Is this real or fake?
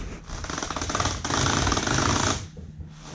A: real